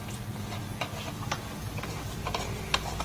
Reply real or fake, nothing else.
real